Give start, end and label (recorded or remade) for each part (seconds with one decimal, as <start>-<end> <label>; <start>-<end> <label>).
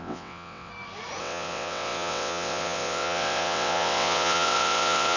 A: 0.0-0.7 remade; 0.7-1.2 recorded; 1.2-5.2 remade